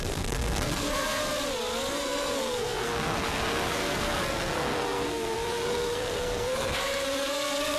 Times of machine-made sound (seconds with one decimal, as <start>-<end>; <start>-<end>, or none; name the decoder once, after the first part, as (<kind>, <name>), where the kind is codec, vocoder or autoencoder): 0.0-1.2 (codec, SNAC); 1.9-7.8